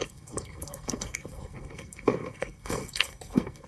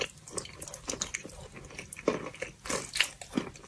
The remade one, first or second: first